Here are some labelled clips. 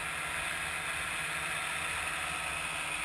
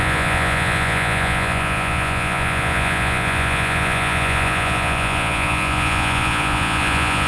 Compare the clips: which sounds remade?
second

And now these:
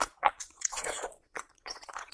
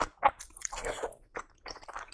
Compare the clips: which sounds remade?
first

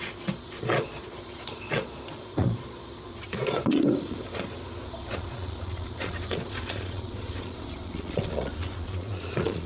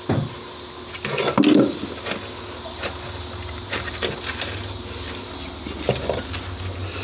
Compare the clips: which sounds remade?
first